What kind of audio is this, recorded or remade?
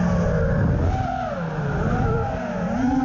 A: recorded